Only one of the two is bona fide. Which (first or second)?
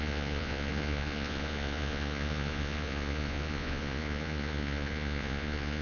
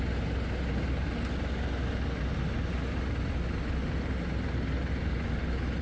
second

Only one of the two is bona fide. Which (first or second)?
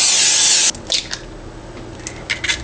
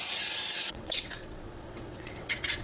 first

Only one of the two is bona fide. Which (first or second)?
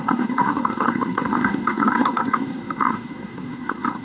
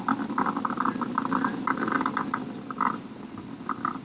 second